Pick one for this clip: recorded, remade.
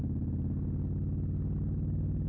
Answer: recorded